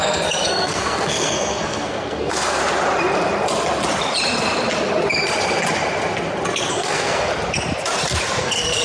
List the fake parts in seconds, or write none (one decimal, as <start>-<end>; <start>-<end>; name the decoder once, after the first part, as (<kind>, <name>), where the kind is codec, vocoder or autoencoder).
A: 0.0-2.6 (codec, SNAC); 6.7-7.3; 8.4-8.8